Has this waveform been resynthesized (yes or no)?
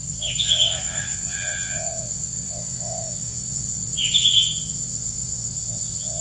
yes